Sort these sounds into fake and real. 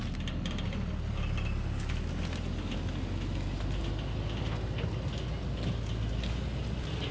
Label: real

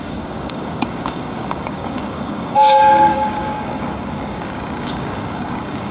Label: fake